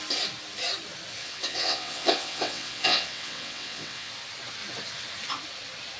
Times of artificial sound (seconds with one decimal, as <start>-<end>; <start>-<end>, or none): 1.2-4.1